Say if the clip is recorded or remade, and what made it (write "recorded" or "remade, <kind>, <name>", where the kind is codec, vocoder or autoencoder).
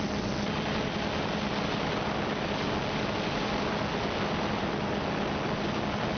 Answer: recorded